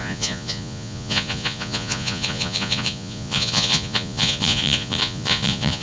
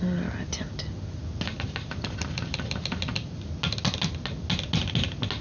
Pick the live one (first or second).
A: second